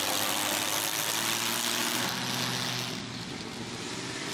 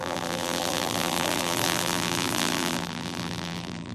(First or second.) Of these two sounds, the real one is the first